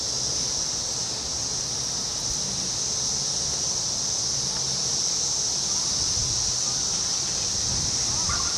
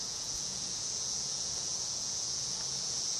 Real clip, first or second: first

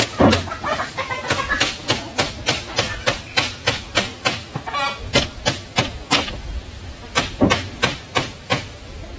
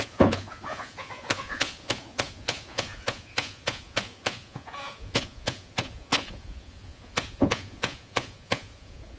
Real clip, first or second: first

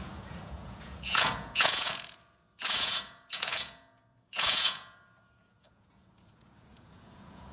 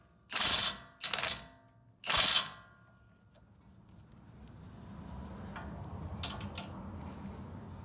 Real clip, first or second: second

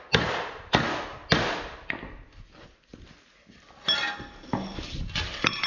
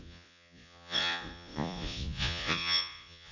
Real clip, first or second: first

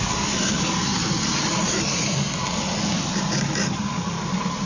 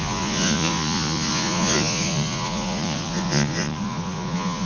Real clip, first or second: first